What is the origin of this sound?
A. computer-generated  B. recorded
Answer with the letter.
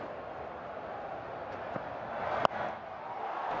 B